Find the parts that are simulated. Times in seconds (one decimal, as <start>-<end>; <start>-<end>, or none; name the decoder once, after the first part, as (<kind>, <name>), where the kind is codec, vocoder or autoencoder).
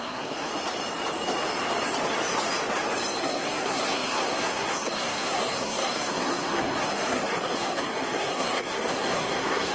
0.0-0.5 (codec, SNAC); 3.2-9.7